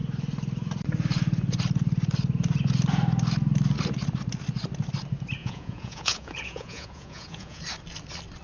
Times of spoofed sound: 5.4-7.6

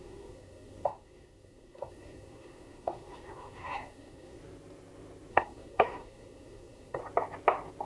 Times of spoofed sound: 0.0-4.4; 5.3-7.0

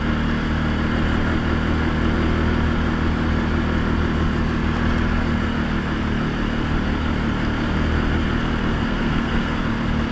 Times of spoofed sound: 8.7-9.6

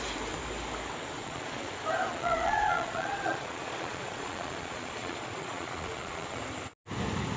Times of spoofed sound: 1.2-1.7; 2.1-6.4